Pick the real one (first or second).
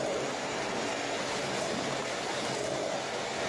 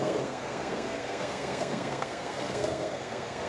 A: first